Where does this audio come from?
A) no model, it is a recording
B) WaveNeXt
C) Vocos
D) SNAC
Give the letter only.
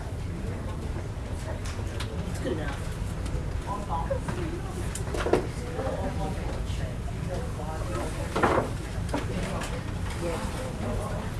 A